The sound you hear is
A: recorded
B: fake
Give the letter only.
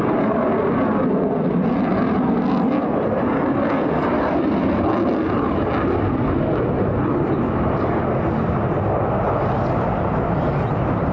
A